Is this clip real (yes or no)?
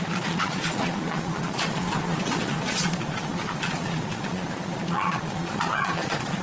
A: no